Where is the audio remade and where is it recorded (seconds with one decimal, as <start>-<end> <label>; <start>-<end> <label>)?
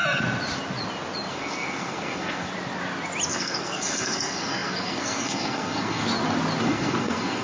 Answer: 0.0-1.3 recorded; 1.3-2.5 remade; 2.5-3.3 recorded; 3.3-6.0 remade; 6.0-6.6 recorded; 6.6-7.4 remade